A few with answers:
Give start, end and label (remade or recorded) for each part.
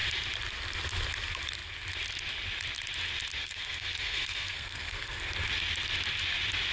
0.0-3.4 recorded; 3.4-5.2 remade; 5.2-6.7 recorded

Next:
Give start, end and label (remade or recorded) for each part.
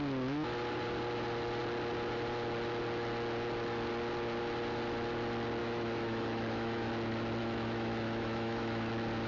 0.0-5.6 recorded; 5.6-6.9 remade; 6.9-7.4 recorded; 7.4-8.9 remade; 8.9-9.3 recorded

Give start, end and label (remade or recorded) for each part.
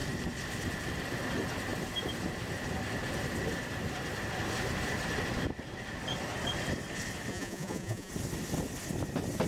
0.0-7.3 recorded; 7.3-8.1 remade; 8.1-9.5 recorded